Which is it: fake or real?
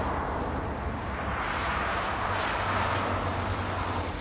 fake